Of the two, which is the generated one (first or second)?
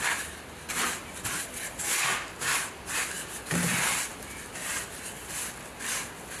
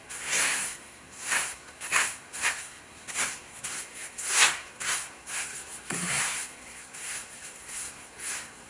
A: second